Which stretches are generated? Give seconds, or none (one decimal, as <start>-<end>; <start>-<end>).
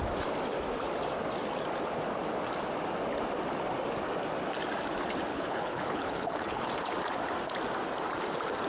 5.3-6.7